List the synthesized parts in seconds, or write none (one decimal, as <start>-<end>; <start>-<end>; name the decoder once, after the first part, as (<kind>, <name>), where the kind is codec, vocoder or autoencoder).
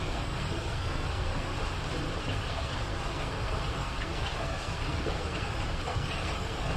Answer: 0.0-1.5 (codec, SNAC); 2.2-6.8